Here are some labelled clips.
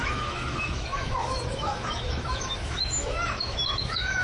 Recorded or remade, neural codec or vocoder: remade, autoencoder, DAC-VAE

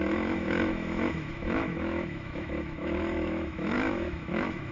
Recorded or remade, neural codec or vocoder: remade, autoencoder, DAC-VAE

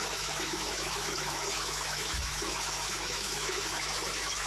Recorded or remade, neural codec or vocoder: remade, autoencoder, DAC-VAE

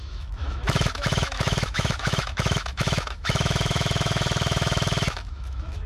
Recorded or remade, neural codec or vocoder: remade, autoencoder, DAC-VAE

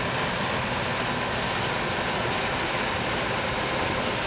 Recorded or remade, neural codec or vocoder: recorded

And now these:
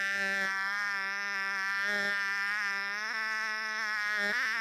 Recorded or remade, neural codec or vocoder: remade, autoencoder, DAC-VAE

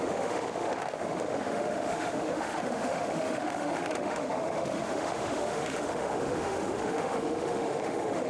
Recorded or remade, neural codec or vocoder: remade, autoencoder, DAC-VAE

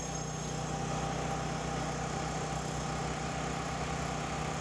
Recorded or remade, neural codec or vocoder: recorded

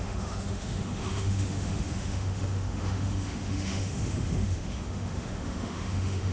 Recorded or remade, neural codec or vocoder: remade, autoencoder, DAC-VAE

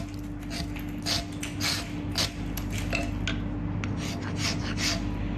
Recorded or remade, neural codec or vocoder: recorded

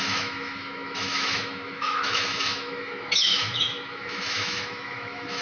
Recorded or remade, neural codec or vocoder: remade, autoencoder, DAC-VAE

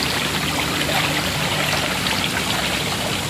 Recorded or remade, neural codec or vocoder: recorded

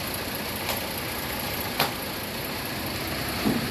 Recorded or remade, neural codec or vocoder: recorded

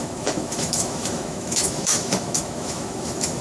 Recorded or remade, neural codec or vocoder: remade, autoencoder, DAC-VAE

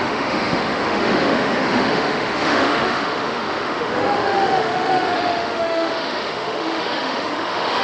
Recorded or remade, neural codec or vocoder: remade, autoencoder, DAC-VAE